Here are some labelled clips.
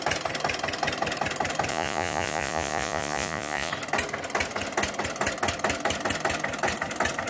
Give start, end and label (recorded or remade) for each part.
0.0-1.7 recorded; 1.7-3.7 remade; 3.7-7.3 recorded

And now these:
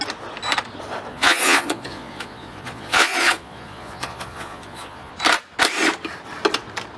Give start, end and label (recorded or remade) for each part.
0.0-1.1 recorded; 1.1-5.1 remade; 5.1-7.0 recorded

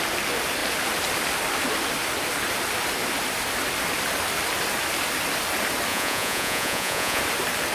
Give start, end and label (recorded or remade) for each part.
0.0-5.9 recorded; 5.9-7.2 remade; 7.2-7.7 recorded

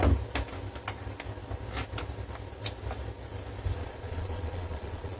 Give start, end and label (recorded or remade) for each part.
0.0-3.8 recorded; 3.8-5.2 remade

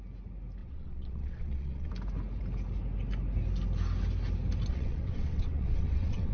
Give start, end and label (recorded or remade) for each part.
0.0-0.6 recorded; 0.6-1.9 remade; 1.9-4.7 recorded; 4.7-6.3 remade

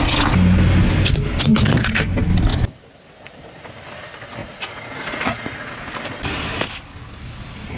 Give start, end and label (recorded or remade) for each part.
0.0-4.4 recorded; 4.4-5.7 remade; 5.7-7.8 recorded

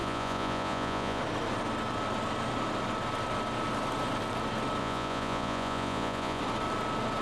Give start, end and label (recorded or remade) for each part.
0.0-1.2 remade; 1.2-4.8 recorded; 4.8-6.4 remade; 6.4-7.2 recorded

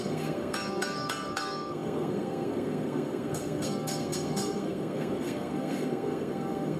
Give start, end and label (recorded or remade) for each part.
0.0-6.8 remade